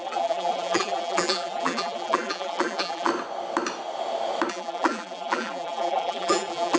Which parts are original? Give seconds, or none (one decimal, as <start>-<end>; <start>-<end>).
3.1-4.5